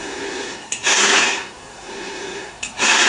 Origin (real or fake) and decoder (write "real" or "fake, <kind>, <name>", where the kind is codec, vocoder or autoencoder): fake, codec, SNAC